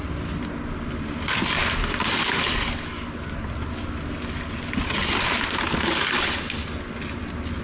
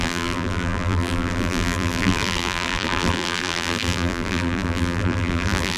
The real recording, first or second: first